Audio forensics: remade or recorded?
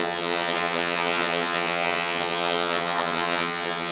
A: remade